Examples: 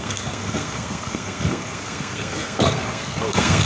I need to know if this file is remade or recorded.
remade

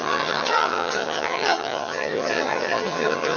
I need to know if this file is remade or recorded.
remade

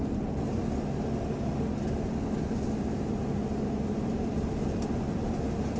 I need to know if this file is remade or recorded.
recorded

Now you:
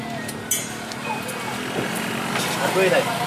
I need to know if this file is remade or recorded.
recorded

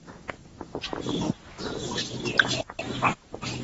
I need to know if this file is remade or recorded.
recorded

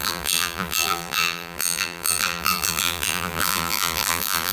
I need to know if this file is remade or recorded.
remade